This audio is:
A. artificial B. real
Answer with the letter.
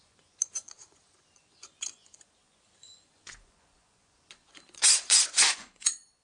A